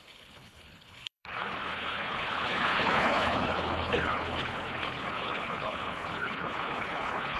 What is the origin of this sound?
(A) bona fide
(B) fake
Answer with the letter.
B